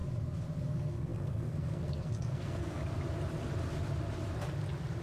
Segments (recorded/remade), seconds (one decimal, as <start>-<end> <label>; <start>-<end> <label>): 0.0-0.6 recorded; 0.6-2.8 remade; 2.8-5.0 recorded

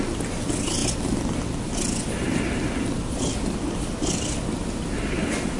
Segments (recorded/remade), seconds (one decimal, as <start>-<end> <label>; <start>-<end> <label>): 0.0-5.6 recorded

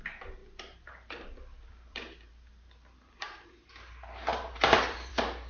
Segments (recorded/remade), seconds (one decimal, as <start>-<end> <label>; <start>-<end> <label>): 0.0-0.4 recorded; 0.4-3.7 remade; 3.7-4.3 recorded; 4.3-5.1 remade; 5.1-5.5 recorded

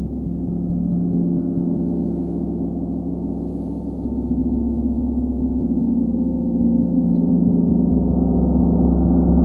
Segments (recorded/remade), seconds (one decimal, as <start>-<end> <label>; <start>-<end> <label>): 0.0-0.9 recorded; 0.9-3.1 remade; 3.1-4.4 recorded; 4.4-7.3 remade; 7.3-9.4 recorded

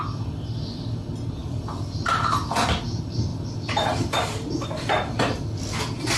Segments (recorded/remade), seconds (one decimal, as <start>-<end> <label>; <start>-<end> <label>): 0.0-1.4 recorded; 1.4-2.1 remade; 2.1-3.3 recorded; 3.3-5.8 remade; 5.8-6.2 recorded